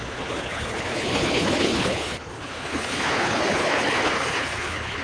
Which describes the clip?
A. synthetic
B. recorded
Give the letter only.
A